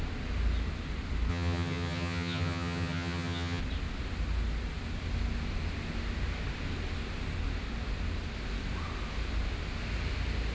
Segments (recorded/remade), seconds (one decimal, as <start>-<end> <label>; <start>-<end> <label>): 0.0-1.3 recorded; 1.3-3.6 remade; 3.6-10.5 recorded